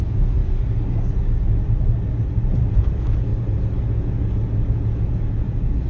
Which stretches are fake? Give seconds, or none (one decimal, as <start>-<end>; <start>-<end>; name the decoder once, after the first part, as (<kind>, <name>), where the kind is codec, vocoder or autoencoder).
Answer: 0.0-0.4 (vocoder, Vocos); 2.8-3.3; 3.9-5.9